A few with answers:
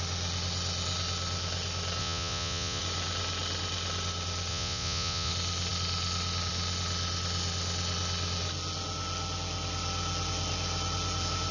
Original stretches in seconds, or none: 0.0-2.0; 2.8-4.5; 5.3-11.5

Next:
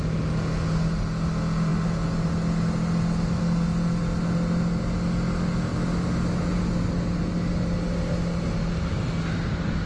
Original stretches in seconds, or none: 0.0-9.9

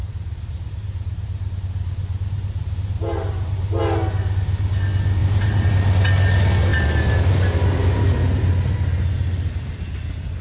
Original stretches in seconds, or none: 3.8-5.2; 5.7-10.4